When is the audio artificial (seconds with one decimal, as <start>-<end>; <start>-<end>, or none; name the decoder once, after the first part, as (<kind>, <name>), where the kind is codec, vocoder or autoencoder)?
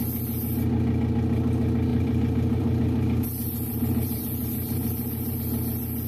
1.9-5.4 (vocoder, BigVGAN v2)